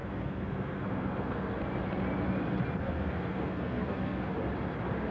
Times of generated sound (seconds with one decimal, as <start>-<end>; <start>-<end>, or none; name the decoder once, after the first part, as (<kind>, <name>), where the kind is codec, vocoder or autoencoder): 0.0-1.6 (codec, SNAC); 2.8-4.3